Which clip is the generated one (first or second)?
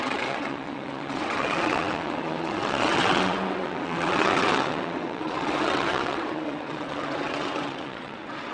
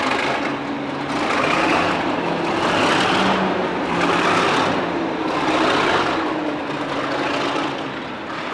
first